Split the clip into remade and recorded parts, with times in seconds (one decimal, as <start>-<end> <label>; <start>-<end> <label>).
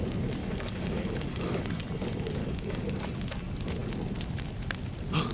0.0-0.4 recorded; 0.4-1.6 remade; 1.6-2.4 recorded; 2.4-3.0 remade; 3.0-5.3 recorded